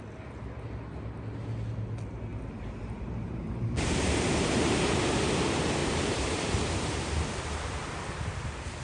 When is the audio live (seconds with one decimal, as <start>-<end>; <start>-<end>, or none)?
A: 0.0-2.3; 5.3-5.8; 6.6-8.8